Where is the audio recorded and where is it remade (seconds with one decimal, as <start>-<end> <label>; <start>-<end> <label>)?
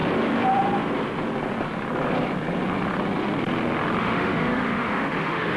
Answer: 0.0-4.0 recorded; 4.0-5.6 remade